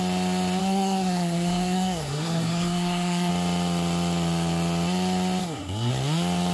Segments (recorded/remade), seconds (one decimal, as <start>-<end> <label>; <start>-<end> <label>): 0.0-0.6 recorded; 0.6-3.3 remade; 3.3-5.4 recorded; 5.4-5.9 remade; 5.9-6.5 recorded